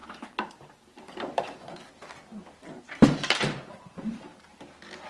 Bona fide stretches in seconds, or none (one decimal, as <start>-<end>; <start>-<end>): 1.9-2.3; 4.4-5.1